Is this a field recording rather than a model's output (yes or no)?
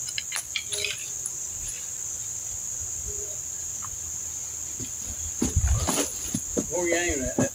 yes